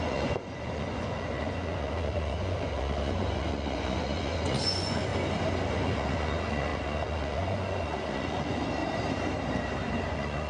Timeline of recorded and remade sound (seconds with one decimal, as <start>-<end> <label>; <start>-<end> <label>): 0.0-5.1 remade; 5.1-5.7 recorded; 5.7-8.8 remade; 8.8-10.1 recorded; 10.1-10.5 remade